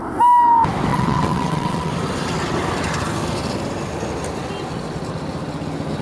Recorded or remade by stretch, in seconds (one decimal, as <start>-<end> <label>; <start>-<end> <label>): 0.0-0.9 recorded; 0.9-1.9 remade; 1.9-6.0 recorded